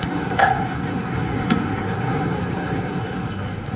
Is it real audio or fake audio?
fake